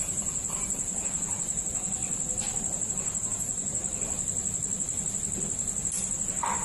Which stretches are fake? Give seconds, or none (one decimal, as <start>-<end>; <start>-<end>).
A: 0.0-2.0; 2.9-3.8